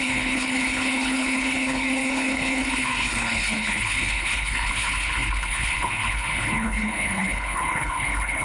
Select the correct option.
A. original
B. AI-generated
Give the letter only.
B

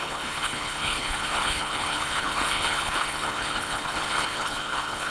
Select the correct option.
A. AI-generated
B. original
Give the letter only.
A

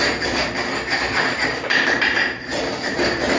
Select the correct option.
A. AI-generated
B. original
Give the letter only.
A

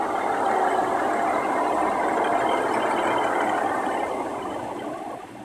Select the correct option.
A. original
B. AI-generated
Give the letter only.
A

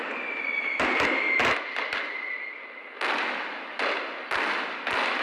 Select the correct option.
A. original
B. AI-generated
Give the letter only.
A